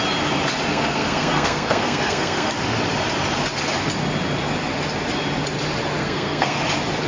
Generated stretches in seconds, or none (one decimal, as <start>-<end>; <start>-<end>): 0.7-2.5; 6.0-6.6